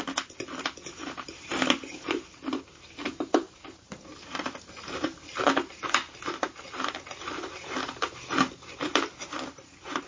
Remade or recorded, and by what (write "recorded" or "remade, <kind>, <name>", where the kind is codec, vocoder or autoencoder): remade, vocoder, BigVGAN v2